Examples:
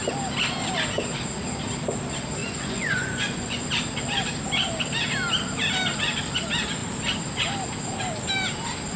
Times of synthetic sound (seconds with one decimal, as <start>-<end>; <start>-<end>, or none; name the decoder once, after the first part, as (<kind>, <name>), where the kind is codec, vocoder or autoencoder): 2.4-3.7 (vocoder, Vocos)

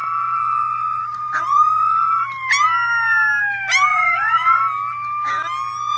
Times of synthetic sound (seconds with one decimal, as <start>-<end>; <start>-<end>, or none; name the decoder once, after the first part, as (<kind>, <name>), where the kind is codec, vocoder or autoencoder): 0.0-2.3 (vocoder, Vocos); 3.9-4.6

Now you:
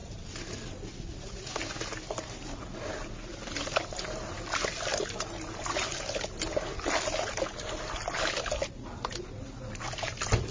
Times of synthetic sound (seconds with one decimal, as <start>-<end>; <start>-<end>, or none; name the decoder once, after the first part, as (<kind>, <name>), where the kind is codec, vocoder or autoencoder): none

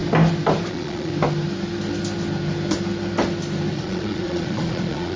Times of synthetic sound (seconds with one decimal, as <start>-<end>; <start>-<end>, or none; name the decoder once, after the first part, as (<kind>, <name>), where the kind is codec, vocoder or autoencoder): 0.7-1.1 (vocoder, Vocos); 3.7-5.2